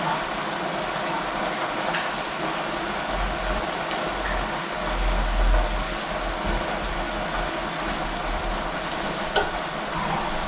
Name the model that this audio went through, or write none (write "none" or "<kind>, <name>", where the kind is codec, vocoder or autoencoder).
none